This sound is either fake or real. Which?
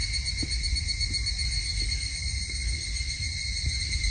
real